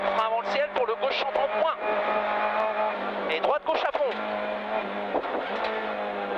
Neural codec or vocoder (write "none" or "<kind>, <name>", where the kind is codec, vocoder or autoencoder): none